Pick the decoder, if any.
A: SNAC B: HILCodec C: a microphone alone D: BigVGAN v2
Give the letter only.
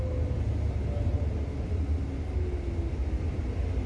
C